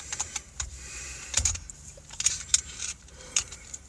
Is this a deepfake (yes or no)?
yes